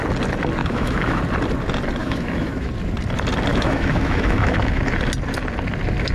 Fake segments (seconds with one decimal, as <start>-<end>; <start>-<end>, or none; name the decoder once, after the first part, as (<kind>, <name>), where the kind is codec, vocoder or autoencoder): 0.6-1.2 (autoencoder, DAC-VAE); 2.0-2.7; 3.5-4.8